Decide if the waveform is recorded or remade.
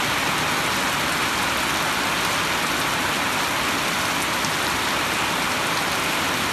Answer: recorded